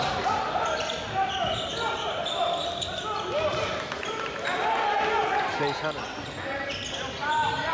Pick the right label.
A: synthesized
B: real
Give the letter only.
B